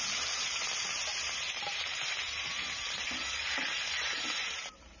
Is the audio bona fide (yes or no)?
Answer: no